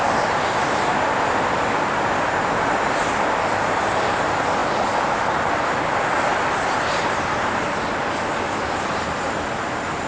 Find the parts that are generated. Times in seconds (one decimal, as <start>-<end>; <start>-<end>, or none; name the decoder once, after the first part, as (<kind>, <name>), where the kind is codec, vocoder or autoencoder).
none